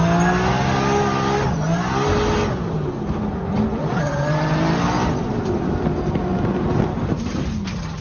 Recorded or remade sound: recorded